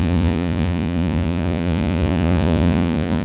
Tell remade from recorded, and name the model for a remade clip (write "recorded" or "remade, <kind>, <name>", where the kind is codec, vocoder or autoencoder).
remade, vocoder, Vocos